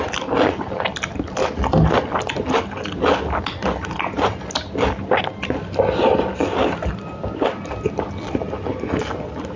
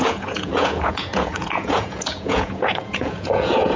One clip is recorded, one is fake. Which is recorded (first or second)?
first